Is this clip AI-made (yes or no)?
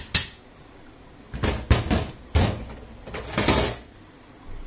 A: no